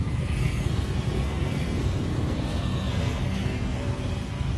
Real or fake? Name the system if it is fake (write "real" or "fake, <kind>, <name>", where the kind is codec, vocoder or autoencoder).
fake, codec, SNAC